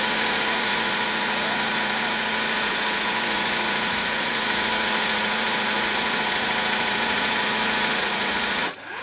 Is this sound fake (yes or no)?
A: yes